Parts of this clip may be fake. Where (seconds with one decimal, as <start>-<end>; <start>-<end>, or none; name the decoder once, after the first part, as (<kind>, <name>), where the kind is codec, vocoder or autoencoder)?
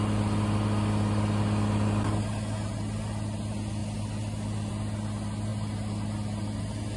none